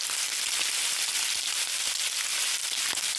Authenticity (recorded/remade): recorded